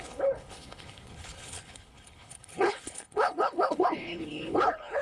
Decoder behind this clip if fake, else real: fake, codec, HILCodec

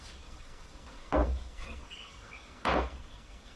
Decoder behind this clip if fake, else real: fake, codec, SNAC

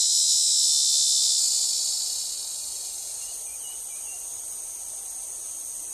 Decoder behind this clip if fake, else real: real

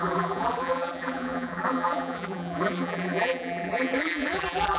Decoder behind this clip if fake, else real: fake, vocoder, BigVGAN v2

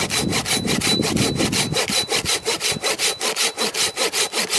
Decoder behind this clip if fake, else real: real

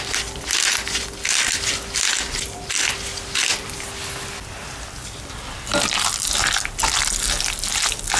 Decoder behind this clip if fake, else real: real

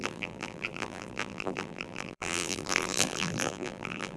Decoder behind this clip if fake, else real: fake, vocoder, BigVGAN v2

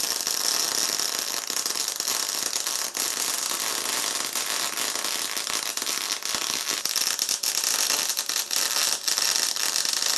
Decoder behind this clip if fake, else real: real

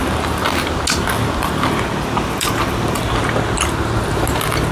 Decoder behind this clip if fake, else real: real